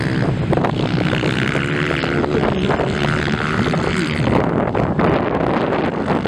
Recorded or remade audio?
recorded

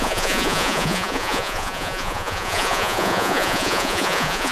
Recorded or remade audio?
remade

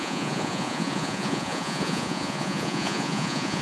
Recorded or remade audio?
remade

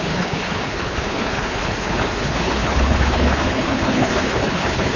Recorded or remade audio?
remade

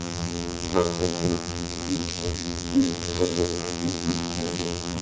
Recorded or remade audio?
remade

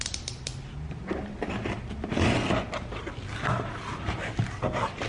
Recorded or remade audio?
remade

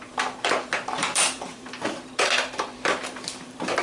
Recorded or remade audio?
remade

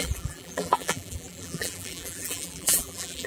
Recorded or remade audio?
remade